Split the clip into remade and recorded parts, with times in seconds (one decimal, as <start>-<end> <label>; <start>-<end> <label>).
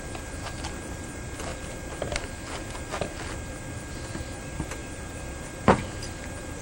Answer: 0.0-1.5 remade; 1.5-3.6 recorded; 3.6-6.6 remade